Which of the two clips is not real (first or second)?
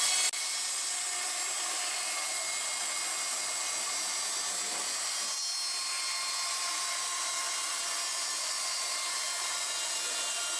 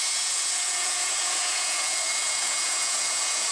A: second